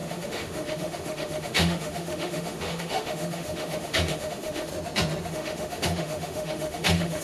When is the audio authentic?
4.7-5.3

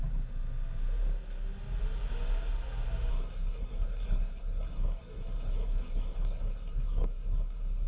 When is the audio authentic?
0.0-3.1

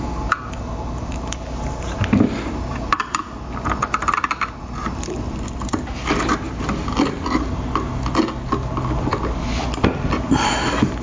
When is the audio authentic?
0.0-11.0